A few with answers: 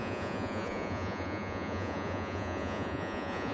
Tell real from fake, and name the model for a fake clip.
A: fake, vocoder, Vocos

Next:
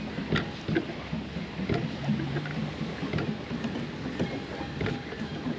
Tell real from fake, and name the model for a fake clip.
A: real